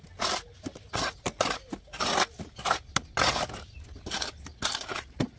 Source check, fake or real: real